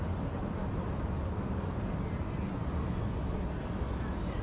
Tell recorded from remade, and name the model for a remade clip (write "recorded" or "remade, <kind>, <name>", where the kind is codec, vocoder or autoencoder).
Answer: recorded